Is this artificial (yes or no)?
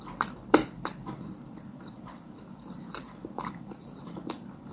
yes